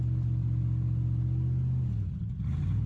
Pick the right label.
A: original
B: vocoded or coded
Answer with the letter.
A